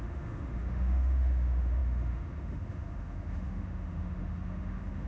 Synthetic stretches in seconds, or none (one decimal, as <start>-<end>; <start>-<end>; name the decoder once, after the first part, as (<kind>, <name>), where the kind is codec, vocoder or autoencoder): 0.0-5.1 (autoencoder, DAC-VAE)